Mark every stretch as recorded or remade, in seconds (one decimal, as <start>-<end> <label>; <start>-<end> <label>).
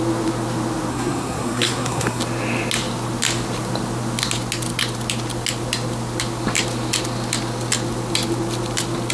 0.0-0.9 recorded; 0.9-2.2 remade; 2.2-9.1 recorded